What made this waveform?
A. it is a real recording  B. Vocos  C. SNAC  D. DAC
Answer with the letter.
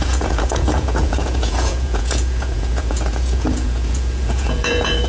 B